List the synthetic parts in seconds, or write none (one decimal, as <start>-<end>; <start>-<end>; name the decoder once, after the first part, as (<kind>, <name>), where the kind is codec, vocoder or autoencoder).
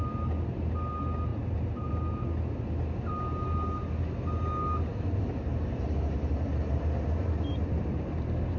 1.3-1.9 (vocoder, BigVGAN v2); 4.9-8.6